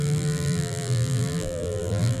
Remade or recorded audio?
remade